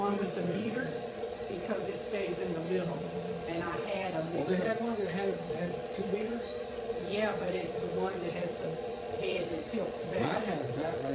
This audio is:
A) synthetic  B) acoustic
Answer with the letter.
A